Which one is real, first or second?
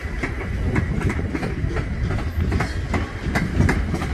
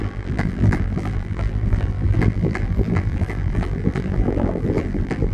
first